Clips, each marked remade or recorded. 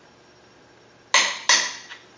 recorded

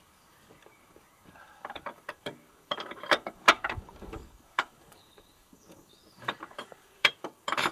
remade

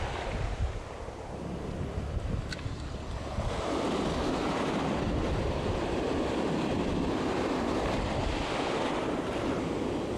remade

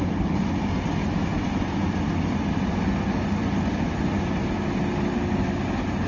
recorded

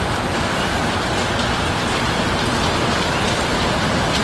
recorded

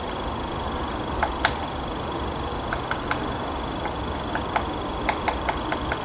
recorded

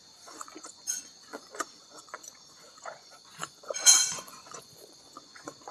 remade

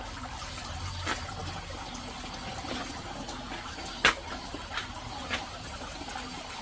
recorded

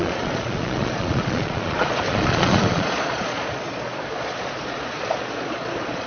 remade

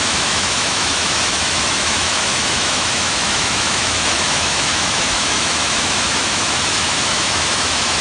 remade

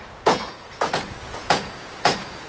remade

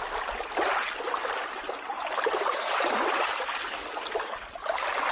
recorded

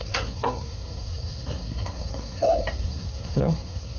remade